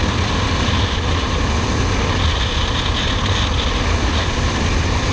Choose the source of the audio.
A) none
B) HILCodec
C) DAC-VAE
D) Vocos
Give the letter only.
A